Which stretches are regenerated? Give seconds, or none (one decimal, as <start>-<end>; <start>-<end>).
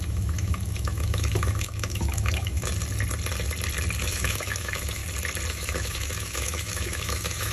0.0-2.7; 4.0-5.0; 5.5-7.5